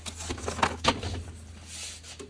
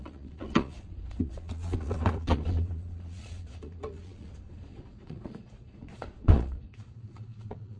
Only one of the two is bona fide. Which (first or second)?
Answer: first